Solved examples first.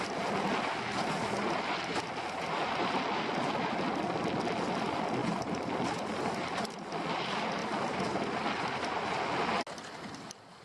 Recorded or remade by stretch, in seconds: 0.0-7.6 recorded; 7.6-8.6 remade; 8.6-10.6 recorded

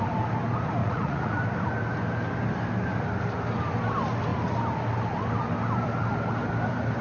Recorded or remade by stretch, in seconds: 0.0-0.8 recorded; 0.8-1.4 remade; 1.4-7.0 recorded

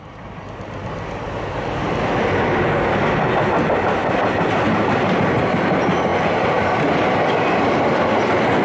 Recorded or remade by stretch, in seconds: 0.0-8.6 recorded

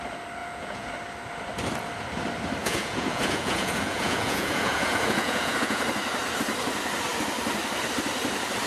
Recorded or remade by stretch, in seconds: 0.0-0.4 recorded; 0.4-0.9 remade; 0.9-2.6 recorded; 2.6-5.8 remade; 5.8-8.7 recorded

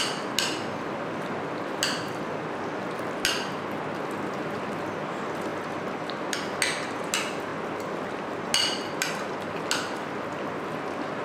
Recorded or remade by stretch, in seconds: 0.0-11.2 recorded